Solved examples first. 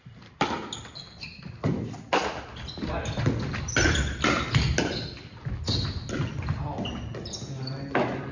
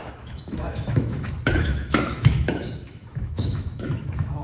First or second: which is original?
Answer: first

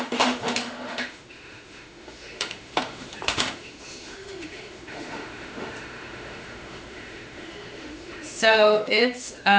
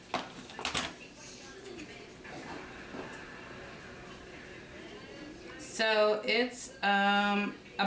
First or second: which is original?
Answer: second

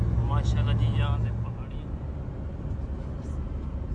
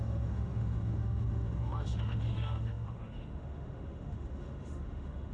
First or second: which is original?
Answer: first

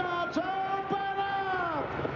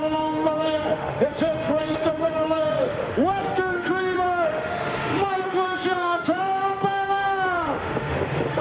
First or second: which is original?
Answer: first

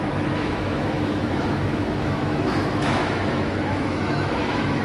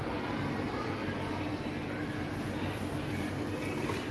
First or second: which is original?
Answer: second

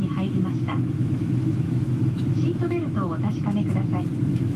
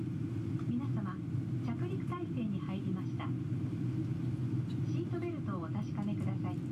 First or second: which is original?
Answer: second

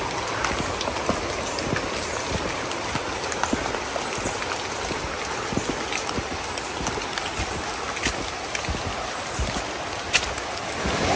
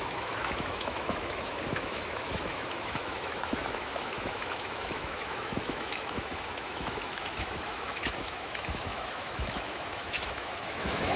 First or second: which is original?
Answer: first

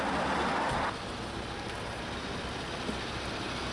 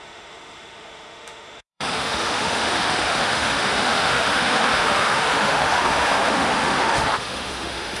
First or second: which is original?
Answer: first